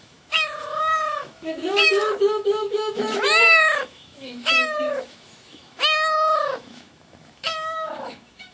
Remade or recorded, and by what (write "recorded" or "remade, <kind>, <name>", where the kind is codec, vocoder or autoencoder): remade, autoencoder, DAC-VAE